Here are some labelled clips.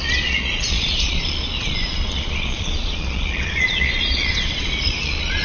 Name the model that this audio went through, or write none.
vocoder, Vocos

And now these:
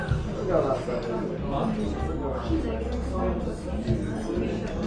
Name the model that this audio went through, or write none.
none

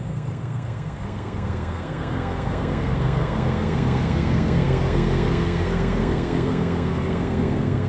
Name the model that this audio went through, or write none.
codec, SNAC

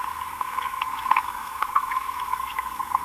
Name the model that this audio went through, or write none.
codec, SNAC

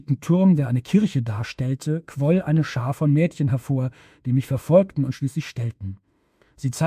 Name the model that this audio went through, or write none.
autoencoder, DAC-VAE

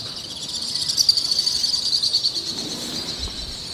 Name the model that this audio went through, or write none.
none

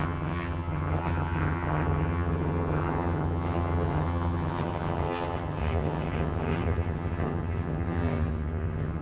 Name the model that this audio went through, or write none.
vocoder, HiFi-GAN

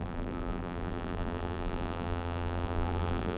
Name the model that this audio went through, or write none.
vocoder, BigVGAN v2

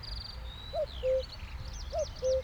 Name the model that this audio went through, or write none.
none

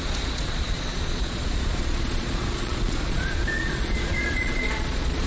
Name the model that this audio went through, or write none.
vocoder, Vocos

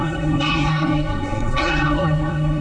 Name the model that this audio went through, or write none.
codec, SNAC